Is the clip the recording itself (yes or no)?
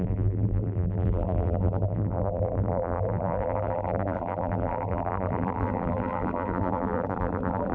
no